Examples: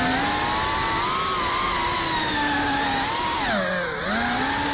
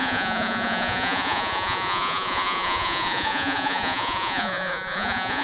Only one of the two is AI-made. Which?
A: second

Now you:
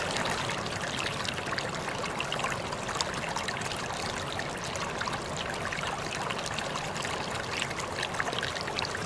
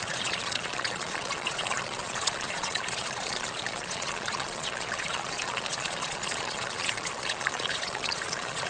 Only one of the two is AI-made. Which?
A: second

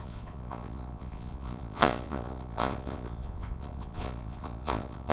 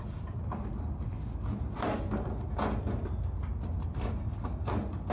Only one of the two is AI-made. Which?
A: first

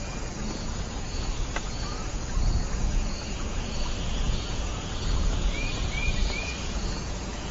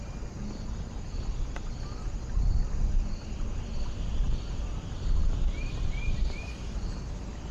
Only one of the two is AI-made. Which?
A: first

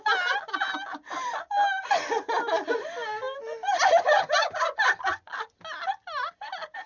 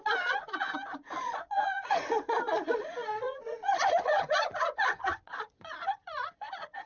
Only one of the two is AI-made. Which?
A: second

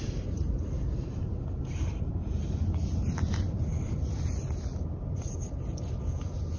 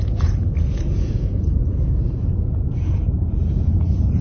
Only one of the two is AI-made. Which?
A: second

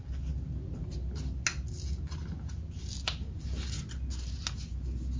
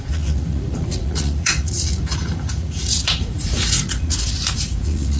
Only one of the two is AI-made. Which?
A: second